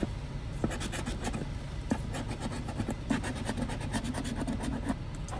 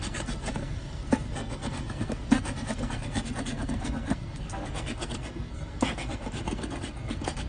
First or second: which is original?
first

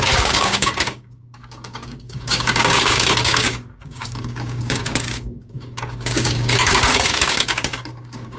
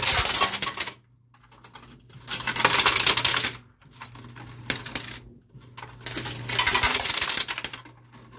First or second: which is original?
second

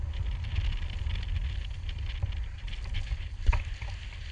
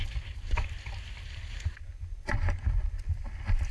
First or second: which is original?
first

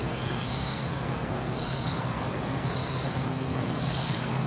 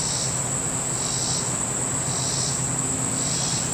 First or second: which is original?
second